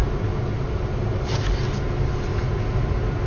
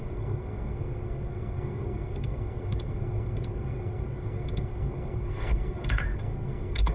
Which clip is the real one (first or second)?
first